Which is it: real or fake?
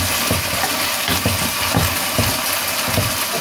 real